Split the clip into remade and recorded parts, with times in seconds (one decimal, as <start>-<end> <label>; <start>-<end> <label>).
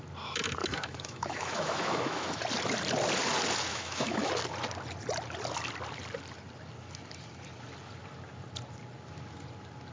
0.0-0.6 recorded; 0.6-2.4 remade; 2.4-3.7 recorded; 3.7-4.3 remade; 4.3-9.9 recorded